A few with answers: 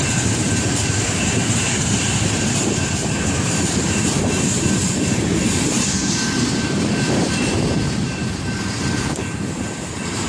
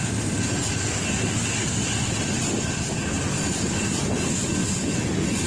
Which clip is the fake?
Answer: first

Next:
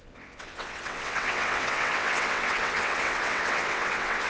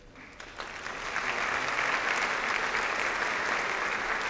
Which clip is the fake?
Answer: first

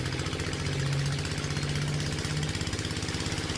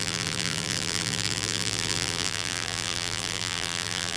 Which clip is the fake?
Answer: second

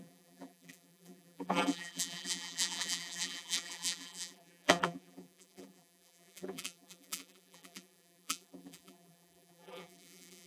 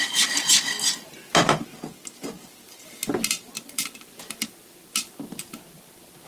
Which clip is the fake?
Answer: first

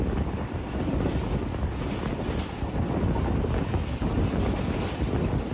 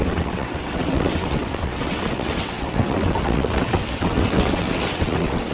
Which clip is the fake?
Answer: second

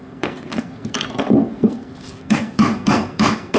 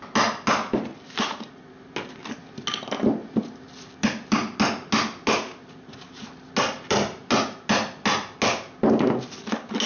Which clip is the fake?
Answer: first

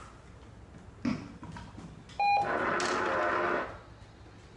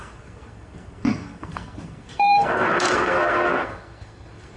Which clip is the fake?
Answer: second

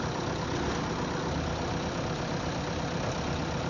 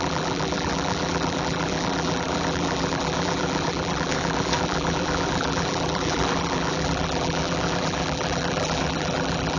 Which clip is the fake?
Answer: second